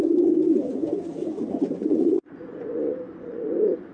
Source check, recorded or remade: remade